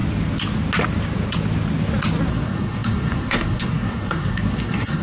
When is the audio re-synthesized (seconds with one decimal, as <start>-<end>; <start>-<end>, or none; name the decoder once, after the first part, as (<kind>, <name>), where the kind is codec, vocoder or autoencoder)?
2.3-5.0 (codec, SNAC)